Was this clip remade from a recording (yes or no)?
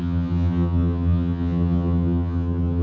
yes